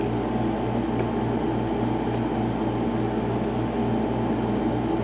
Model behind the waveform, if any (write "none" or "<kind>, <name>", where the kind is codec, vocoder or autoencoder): none